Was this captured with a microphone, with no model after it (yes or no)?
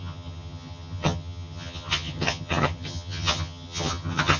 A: no